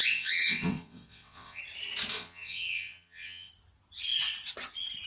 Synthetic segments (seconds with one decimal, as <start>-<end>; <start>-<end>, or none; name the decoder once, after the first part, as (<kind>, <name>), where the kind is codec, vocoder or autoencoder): 0.0-1.6 (vocoder, WaveNeXt); 2.1-3.5